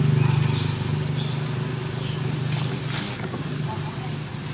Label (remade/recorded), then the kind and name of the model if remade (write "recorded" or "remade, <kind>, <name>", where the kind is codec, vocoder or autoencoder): recorded